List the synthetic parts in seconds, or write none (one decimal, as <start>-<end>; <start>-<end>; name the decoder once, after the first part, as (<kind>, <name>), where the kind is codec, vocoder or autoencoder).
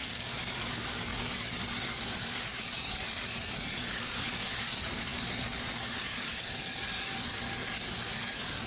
0.0-8.7 (codec, DAC)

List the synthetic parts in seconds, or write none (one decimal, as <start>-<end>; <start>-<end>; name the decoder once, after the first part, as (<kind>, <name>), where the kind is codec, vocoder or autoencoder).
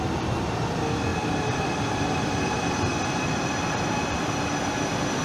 none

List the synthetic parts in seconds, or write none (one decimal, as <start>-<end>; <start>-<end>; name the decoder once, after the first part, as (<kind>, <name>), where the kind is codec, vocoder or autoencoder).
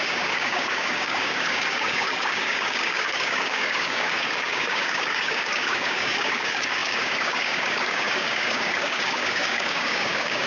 0.0-10.5 (codec, DAC)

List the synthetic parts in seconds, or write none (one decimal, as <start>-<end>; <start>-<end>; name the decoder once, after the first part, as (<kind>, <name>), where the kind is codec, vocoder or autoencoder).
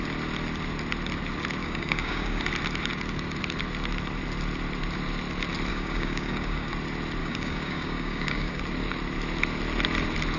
1.6-2.4 (codec, DAC); 5.7-6.7; 7.2-8.6